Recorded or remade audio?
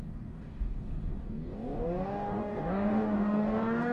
remade